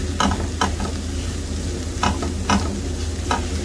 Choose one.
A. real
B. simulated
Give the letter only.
A